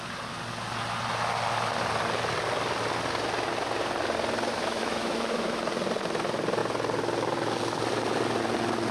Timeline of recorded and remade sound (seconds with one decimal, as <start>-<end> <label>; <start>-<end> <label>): 0.0-4.5 recorded; 4.5-5.6 remade; 5.6-8.9 recorded